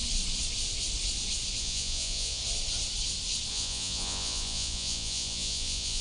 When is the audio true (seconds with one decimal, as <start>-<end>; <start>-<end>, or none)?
0.0-1.6; 2.4-3.5